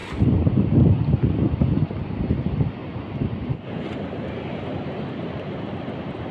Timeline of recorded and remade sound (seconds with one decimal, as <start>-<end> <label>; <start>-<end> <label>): 0.0-6.3 recorded